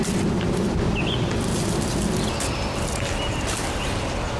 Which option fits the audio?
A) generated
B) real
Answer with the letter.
B